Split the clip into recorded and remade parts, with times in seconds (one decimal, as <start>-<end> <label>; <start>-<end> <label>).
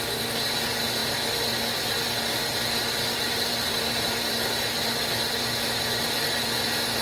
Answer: 0.0-7.0 recorded